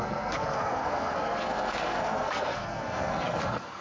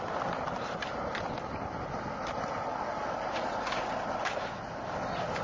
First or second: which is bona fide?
second